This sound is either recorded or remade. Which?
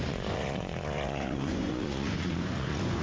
remade